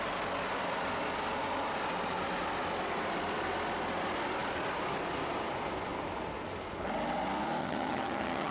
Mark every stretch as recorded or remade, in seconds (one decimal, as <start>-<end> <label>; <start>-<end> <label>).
0.0-7.6 recorded; 7.6-8.5 remade